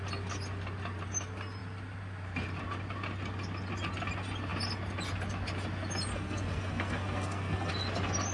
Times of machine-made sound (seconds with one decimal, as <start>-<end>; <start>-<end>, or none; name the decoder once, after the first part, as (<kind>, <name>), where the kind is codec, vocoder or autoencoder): 6.1-7.7 (codec, SNAC)